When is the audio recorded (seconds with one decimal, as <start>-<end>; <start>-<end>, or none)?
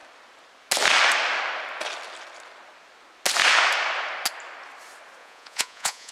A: 0.0-5.2